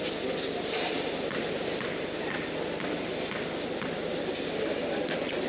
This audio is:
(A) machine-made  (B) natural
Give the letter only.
B